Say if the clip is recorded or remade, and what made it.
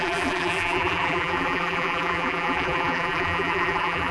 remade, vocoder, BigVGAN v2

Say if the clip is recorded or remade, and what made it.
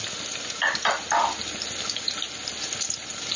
recorded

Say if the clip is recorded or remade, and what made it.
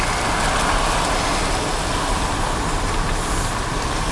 recorded